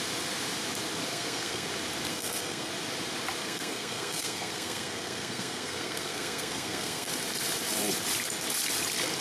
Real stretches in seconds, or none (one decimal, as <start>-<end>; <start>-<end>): 0.0-1.1; 1.7-2.1; 2.7-3.4; 7.1-9.2

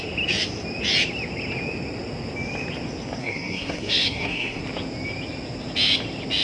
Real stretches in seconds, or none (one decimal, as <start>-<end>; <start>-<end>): 0.0-3.2; 4.6-6.4